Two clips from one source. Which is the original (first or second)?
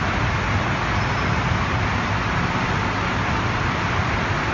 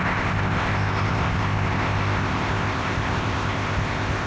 first